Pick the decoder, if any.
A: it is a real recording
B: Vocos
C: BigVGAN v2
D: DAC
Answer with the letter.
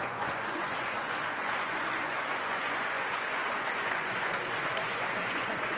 B